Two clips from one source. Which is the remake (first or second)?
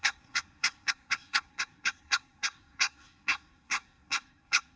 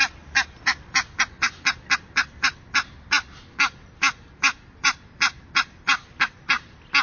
first